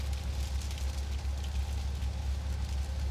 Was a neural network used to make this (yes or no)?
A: no